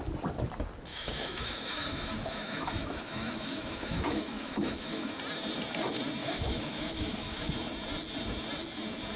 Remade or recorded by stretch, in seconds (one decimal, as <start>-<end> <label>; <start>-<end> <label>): 0.0-0.9 recorded; 0.9-5.1 remade; 5.1-6.2 recorded; 6.2-7.5 remade; 7.5-9.2 recorded